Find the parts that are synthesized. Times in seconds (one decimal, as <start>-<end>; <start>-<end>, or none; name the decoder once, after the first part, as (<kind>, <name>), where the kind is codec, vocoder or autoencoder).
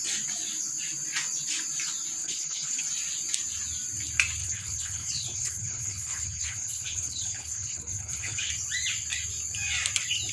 2.2-2.8 (codec, HILCodec); 4.4-8.5